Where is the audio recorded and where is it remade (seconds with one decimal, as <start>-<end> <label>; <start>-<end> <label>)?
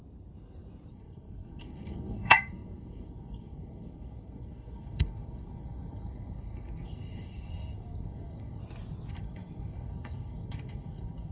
0.0-0.9 recorded; 0.9-8.6 remade; 8.6-9.1 recorded; 9.1-11.3 remade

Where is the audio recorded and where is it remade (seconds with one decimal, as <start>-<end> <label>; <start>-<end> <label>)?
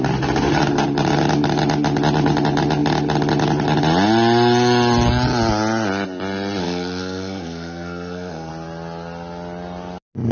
0.0-6.6 recorded; 6.6-8.5 remade; 8.5-10.3 recorded